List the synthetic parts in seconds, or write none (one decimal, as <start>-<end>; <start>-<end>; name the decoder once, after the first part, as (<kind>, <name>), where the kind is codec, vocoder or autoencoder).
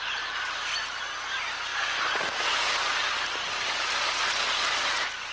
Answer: 1.7-2.2 (vocoder, Vocos)